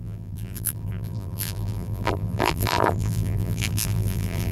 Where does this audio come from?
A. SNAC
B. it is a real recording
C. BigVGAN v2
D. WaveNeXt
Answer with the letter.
C